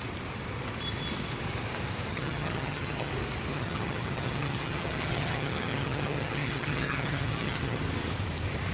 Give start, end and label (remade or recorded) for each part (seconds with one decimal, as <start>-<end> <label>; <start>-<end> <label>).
0.0-2.1 recorded; 2.1-3.1 remade; 3.1-3.5 recorded; 3.5-7.8 remade; 7.8-8.7 recorded